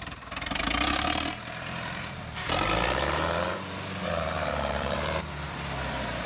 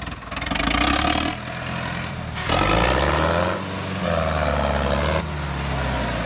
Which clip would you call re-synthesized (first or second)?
first